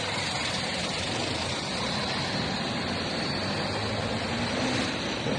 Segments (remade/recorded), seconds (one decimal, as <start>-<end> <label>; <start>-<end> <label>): 0.0-0.4 recorded; 0.4-3.6 remade; 3.6-4.1 recorded; 4.1-4.8 remade; 4.8-5.4 recorded